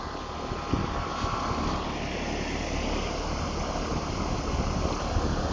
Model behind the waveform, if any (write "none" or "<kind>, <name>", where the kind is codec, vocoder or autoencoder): none